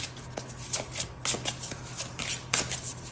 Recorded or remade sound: recorded